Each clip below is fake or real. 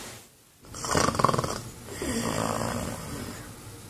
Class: real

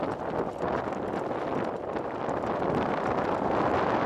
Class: real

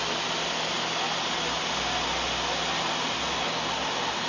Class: real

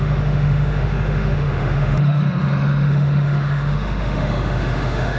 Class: fake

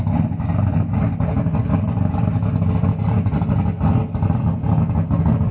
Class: real